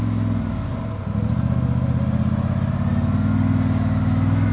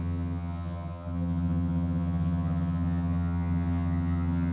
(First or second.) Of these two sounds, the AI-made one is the second